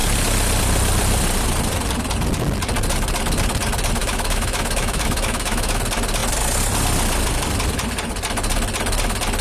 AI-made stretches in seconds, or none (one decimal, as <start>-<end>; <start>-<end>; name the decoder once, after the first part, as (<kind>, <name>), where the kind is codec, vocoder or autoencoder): 4.0-5.8 (autoencoder, DAC-VAE)